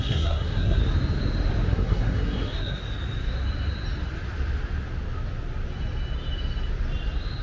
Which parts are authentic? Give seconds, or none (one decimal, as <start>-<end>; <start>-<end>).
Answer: 0.8-1.7; 2.8-7.4